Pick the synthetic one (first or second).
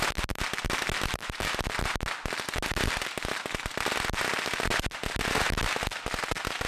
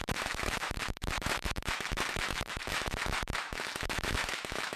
second